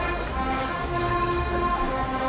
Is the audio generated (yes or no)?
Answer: no